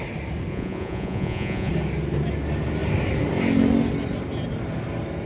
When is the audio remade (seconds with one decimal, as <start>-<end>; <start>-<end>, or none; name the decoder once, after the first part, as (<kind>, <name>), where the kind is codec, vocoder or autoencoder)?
0.5-1.7 (vocoder, Vocos)